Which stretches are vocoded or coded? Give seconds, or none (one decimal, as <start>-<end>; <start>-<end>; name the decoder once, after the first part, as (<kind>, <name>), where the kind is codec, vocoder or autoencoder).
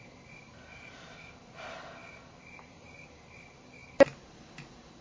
2.0-3.4 (vocoder, BigVGAN v2)